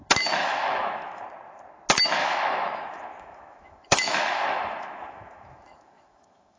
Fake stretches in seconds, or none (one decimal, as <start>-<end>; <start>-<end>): 0.4-1.2; 2.2-6.6